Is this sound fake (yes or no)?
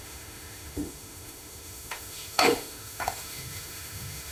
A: yes